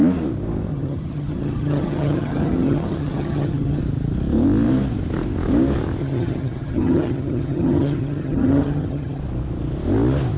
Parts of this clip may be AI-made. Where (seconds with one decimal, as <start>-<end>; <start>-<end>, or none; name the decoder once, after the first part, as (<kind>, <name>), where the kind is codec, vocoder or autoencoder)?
0.7-3.8 (vocoder, HiFi-GAN); 6.0-9.2